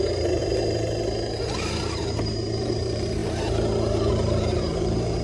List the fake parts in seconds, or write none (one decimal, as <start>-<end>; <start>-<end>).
0.0-0.4; 1.4-3.2; 4.1-5.2